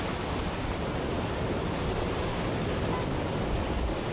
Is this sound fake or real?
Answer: real